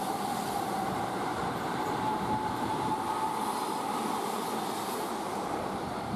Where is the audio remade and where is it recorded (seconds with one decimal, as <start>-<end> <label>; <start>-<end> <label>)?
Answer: 0.0-2.7 remade; 2.7-5.1 recorded; 5.1-6.2 remade